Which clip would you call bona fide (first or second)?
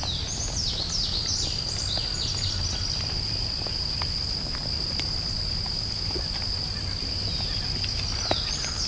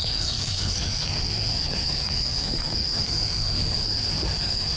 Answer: first